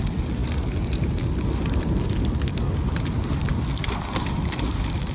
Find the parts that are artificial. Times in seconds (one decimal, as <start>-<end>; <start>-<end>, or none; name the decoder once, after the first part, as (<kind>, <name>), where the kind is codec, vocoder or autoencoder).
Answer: none